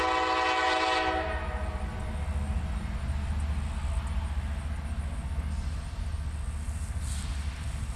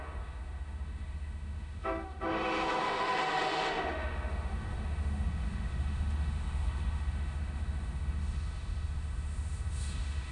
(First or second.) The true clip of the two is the first